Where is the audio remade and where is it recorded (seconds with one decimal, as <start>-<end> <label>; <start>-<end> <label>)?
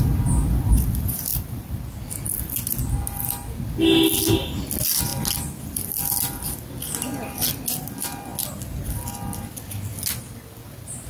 0.0-11.1 recorded